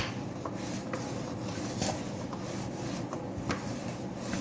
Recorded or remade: recorded